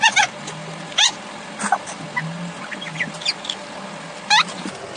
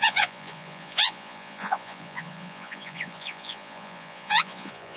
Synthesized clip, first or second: second